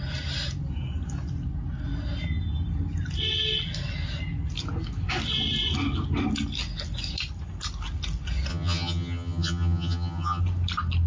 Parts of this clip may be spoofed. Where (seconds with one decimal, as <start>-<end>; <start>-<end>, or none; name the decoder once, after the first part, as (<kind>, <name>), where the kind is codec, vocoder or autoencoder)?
8.5-10.4 (vocoder, HiFi-GAN)